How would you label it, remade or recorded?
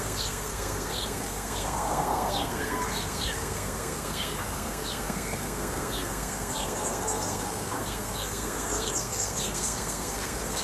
remade